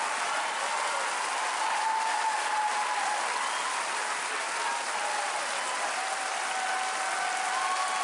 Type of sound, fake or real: real